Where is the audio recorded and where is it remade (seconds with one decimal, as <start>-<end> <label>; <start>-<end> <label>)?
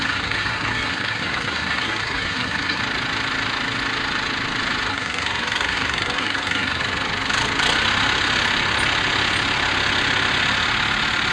0.0-2.8 remade; 2.8-4.9 recorded; 4.9-6.8 remade; 6.8-11.3 recorded